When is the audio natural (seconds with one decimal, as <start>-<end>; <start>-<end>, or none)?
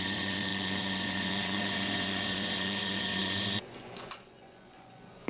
none